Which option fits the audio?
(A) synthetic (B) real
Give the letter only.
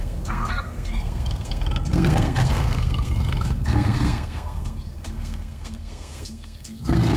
A